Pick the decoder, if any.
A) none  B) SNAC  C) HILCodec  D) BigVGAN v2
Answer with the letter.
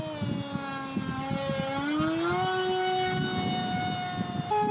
A